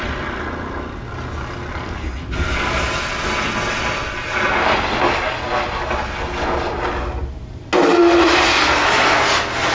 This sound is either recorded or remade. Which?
recorded